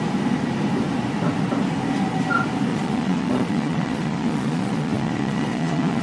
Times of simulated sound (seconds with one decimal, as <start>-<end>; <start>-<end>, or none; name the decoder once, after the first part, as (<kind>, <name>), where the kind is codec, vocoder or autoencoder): 2.7-6.0 (vocoder, Vocos)